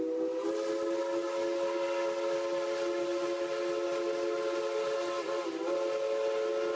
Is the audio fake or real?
real